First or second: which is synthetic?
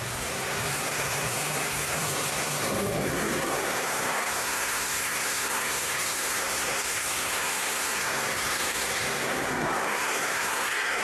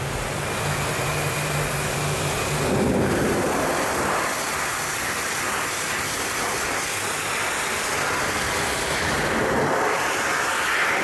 first